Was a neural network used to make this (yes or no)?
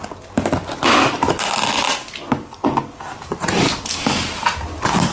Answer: no